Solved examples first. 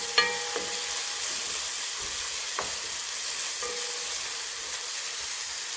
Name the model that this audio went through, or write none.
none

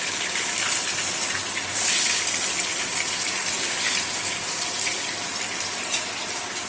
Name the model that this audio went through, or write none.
none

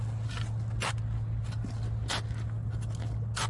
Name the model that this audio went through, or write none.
none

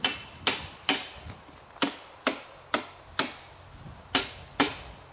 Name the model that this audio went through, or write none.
none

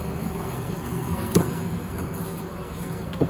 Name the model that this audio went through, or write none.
codec, SNAC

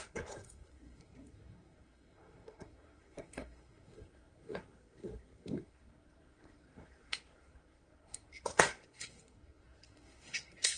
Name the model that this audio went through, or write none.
codec, SNAC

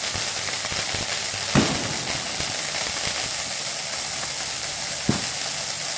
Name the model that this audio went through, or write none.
none